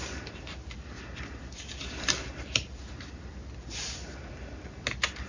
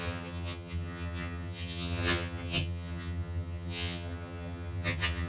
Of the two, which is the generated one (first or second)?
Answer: second